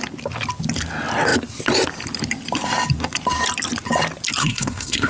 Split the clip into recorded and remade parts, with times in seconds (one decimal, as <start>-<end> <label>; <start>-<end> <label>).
0.0-4.4 recorded; 4.4-5.1 remade